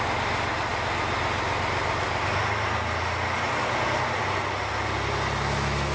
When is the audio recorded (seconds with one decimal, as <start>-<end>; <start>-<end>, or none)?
0.0-5.9